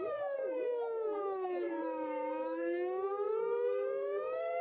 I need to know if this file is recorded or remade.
remade